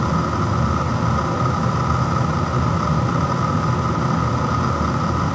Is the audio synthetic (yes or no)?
no